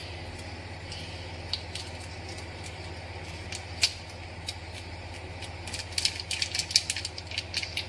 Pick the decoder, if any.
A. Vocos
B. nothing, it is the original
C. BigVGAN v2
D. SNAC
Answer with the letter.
B